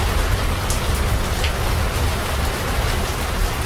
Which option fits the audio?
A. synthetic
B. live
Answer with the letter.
B